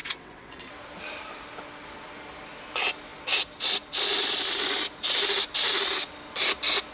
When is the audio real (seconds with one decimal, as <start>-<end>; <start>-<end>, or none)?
0.7-6.9